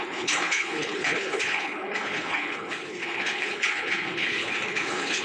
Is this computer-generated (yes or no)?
yes